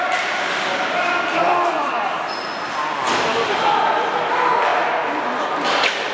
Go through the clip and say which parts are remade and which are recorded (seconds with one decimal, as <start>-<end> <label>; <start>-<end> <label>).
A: 0.0-6.1 recorded